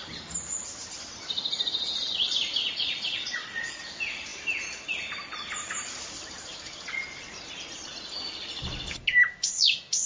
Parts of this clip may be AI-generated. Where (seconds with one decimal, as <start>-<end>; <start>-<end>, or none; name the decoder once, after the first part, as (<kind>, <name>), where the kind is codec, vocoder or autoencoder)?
2.6-3.8 (vocoder, Vocos)